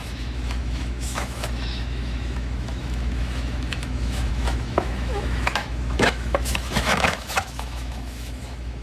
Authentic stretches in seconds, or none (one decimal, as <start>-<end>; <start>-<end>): none